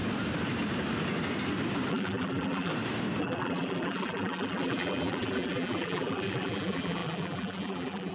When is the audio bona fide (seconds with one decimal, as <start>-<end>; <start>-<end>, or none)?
0.0-1.9; 2.7-3.2